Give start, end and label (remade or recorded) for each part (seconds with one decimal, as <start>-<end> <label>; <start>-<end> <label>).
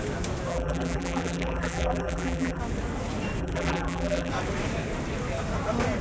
0.0-0.5 recorded; 0.5-2.6 remade; 2.6-3.4 recorded; 3.4-4.3 remade; 4.3-6.0 recorded